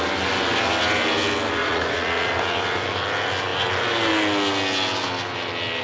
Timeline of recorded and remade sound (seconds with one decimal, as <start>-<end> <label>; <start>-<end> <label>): 0.0-1.6 recorded; 1.6-2.3 remade; 2.3-5.8 recorded